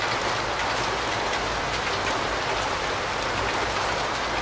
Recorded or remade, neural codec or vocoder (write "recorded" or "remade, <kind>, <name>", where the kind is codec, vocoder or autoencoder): recorded